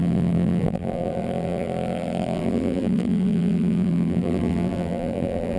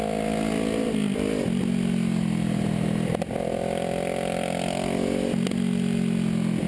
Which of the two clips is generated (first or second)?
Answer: first